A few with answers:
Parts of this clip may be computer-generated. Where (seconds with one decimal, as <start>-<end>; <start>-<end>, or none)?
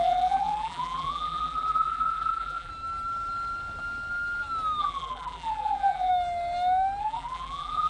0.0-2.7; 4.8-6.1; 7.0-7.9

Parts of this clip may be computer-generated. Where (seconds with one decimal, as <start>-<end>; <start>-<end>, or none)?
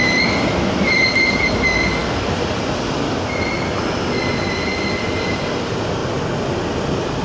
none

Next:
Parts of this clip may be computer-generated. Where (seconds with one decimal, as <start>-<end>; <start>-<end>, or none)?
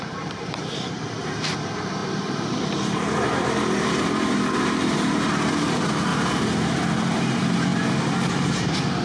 0.0-6.1; 6.7-9.0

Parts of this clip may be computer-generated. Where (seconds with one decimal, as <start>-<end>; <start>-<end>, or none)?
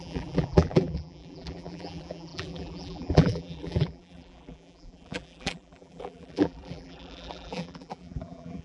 0.0-8.6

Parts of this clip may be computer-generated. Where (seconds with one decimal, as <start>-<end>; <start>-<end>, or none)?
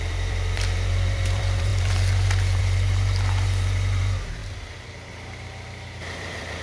0.0-4.4; 5.1-6.6